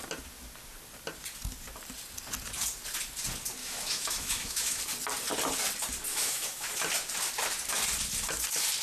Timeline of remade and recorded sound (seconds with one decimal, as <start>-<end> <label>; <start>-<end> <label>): 0.0-3.6 recorded; 3.6-4.8 remade; 4.8-6.1 recorded; 6.1-6.7 remade; 6.7-8.8 recorded